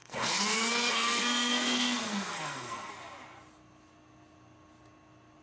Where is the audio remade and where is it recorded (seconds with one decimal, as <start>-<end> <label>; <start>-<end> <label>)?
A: 0.0-2.9 remade; 2.9-5.4 recorded